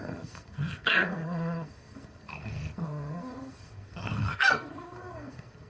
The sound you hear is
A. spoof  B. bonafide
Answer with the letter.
A